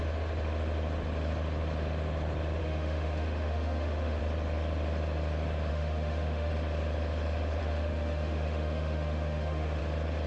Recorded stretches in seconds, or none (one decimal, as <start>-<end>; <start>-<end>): 0.0-2.6; 4.2-5.7; 6.5-7.6; 9.8-10.3